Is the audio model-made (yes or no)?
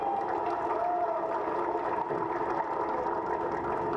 no